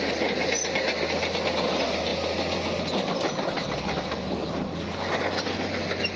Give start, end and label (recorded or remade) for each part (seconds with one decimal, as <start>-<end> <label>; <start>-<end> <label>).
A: 0.0-6.2 recorded